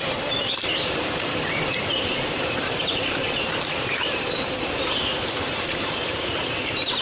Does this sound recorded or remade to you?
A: remade